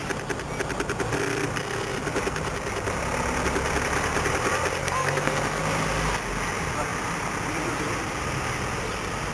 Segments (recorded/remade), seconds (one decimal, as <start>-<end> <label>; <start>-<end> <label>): 0.0-4.8 recorded; 4.8-5.6 remade; 5.6-9.3 recorded